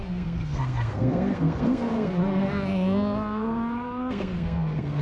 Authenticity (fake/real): fake